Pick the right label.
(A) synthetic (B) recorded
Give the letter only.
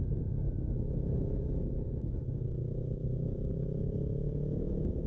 A